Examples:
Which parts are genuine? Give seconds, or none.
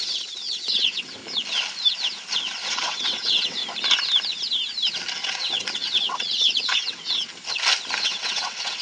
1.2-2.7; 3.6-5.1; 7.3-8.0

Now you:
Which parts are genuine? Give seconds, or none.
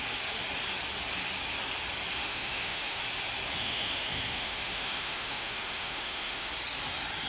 0.0-2.2; 3.0-3.6; 6.5-7.3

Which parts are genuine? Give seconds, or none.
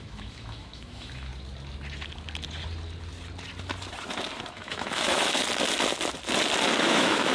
1.3-4.5; 5.4-6.8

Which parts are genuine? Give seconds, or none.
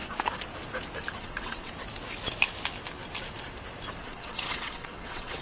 0.0-1.2; 1.7-4.0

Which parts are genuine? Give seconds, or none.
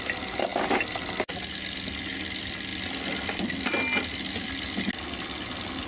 0.0-5.9